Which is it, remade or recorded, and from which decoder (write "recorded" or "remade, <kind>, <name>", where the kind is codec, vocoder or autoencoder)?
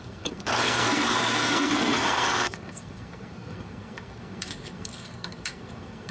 remade, codec, SNAC